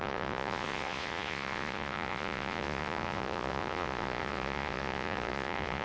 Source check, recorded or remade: remade